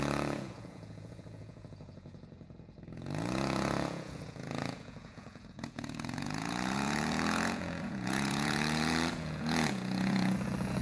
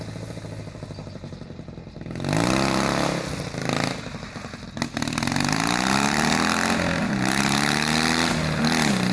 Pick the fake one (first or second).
first